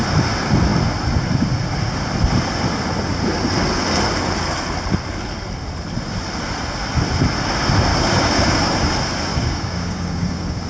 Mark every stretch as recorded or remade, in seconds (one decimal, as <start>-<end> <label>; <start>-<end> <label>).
0.0-7.9 recorded; 7.9-8.9 remade; 8.9-9.3 recorded; 9.3-10.7 remade

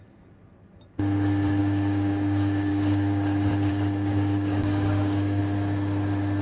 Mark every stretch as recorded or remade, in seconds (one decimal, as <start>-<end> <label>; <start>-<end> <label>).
0.0-1.6 recorded; 1.6-5.4 remade; 5.4-6.4 recorded

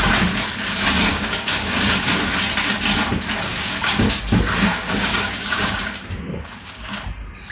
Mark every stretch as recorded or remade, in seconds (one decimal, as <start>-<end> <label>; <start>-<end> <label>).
0.0-1.1 recorded; 1.1-2.1 remade; 2.1-3.5 recorded; 3.5-4.2 remade; 4.2-4.7 recorded; 4.7-6.9 remade; 6.9-7.5 recorded

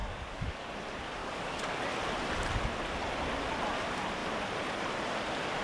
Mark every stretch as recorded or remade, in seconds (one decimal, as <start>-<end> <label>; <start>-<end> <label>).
0.0-0.7 remade; 0.7-1.2 recorded; 1.2-1.8 remade; 1.8-5.6 recorded

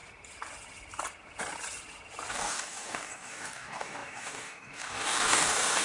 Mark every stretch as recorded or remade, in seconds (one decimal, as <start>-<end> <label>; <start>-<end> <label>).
0.0-2.3 recorded; 2.3-5.8 remade

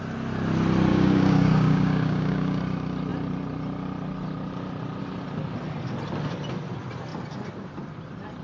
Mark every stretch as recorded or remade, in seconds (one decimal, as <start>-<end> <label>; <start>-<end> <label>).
0.0-0.9 recorded; 0.9-2.6 remade; 2.6-8.4 recorded

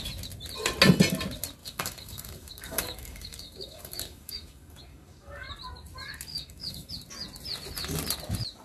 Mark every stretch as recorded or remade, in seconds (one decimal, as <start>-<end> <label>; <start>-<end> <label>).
0.0-1.6 recorded; 1.6-5.5 remade; 5.5-6.3 recorded; 6.3-6.9 remade; 6.9-8.6 recorded